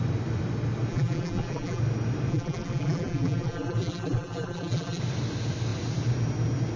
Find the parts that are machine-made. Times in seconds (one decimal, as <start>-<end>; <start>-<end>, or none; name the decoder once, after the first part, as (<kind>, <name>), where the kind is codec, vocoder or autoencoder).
0.9-1.8 (vocoder, BigVGAN v2); 2.3-5.0